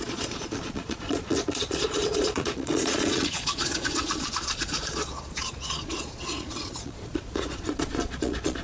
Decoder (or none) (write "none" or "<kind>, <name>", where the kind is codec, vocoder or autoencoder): vocoder, Vocos